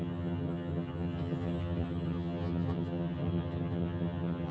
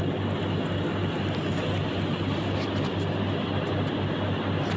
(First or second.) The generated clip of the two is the first